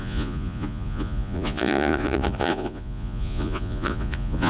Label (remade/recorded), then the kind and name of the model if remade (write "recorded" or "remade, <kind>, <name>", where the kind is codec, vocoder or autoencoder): remade, vocoder, Vocos